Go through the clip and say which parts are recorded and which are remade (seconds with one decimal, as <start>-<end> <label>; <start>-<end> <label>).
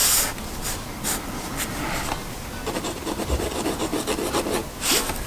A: 0.0-5.3 recorded